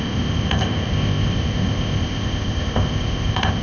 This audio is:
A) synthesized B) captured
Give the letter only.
A